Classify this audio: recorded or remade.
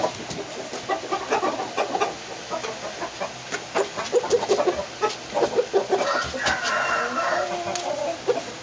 recorded